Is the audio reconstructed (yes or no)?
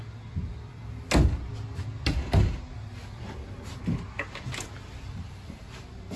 no